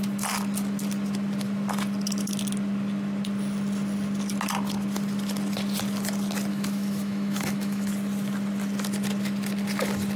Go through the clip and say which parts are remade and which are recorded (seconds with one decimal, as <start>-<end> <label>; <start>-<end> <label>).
0.0-6.5 recorded; 6.5-7.9 remade; 7.9-10.2 recorded